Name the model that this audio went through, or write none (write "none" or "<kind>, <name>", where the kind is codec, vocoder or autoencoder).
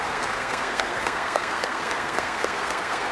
codec, SNAC